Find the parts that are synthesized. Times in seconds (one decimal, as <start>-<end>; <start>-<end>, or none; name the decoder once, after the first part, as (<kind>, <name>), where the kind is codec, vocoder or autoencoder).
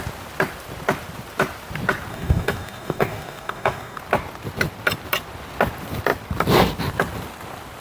2.1-4.0 (codec, DAC)